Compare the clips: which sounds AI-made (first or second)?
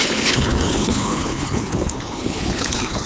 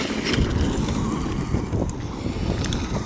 first